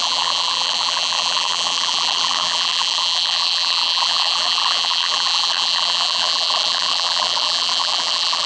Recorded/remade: remade